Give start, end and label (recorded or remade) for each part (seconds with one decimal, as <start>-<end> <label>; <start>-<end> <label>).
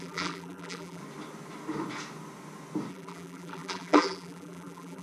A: 0.0-1.0 remade; 1.0-2.9 recorded; 2.9-5.0 remade